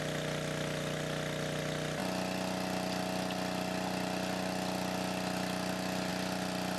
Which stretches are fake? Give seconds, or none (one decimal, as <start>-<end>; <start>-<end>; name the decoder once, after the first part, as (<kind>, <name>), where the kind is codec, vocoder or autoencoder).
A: none